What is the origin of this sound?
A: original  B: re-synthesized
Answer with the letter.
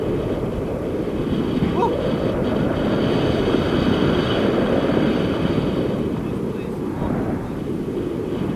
A